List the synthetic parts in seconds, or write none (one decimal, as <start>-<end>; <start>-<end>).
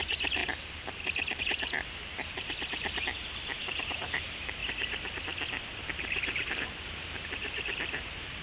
0.0-0.4; 1.4-4.6; 6.0-8.4